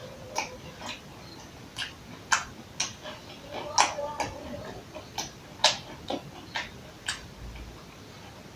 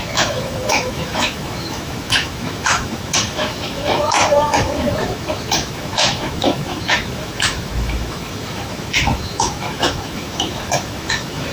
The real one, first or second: first